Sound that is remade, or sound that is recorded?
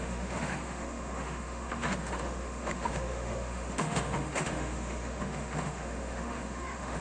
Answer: remade